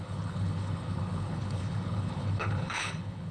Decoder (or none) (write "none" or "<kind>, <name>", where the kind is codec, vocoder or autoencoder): codec, HILCodec